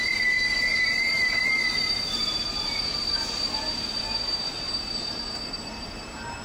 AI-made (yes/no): no